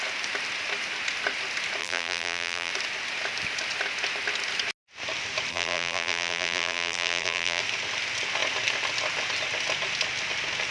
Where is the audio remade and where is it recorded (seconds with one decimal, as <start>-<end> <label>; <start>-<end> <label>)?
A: 0.0-1.8 recorded; 1.8-2.7 remade; 2.7-5.5 recorded; 5.5-7.6 remade; 7.6-10.7 recorded